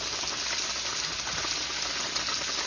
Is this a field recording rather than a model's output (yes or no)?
yes